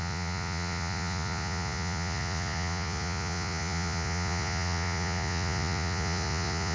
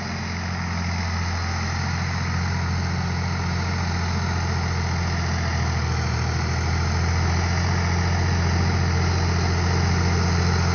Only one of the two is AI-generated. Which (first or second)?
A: first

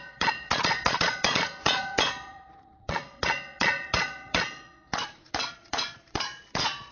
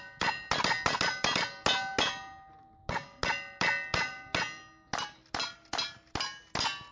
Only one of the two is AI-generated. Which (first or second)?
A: first